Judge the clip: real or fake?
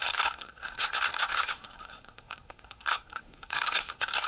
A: fake